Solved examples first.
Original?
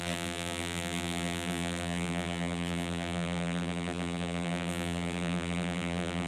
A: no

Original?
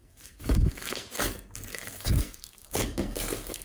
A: no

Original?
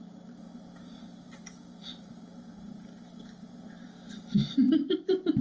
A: yes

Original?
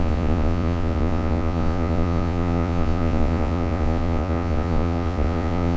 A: no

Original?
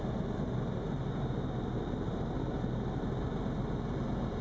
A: yes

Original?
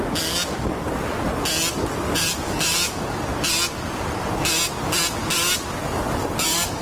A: yes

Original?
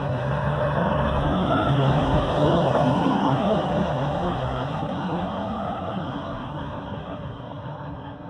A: no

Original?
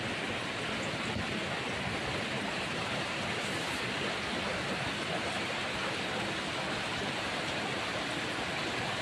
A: yes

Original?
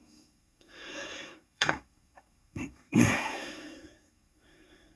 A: no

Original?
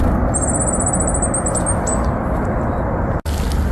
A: yes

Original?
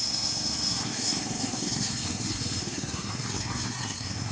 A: no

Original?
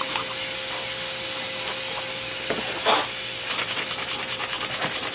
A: yes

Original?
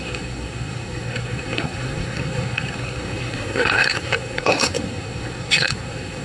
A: no